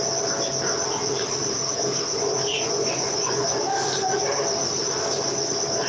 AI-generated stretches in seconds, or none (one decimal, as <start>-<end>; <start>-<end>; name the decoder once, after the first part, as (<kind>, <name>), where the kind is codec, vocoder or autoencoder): 2.5-3.6 (vocoder, Vocos)